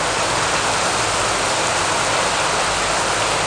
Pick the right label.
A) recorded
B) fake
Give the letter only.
A